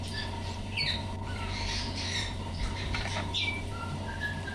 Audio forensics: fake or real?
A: fake